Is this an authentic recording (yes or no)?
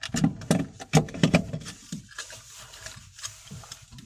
no